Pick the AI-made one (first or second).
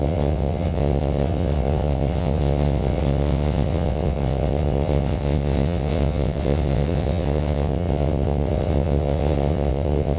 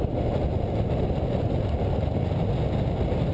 first